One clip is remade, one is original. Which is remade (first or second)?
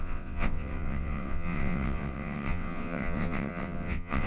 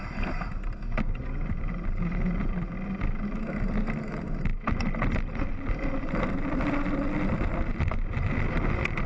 first